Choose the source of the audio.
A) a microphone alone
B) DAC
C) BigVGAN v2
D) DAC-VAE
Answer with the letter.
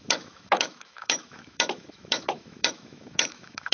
D